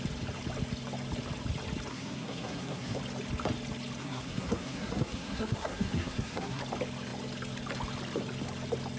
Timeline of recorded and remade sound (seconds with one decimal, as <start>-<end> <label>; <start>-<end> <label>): 0.0-1.9 recorded; 1.9-3.0 remade; 3.0-4.0 recorded; 4.0-6.6 remade; 6.6-9.0 recorded